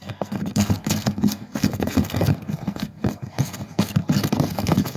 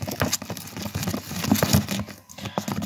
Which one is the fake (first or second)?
first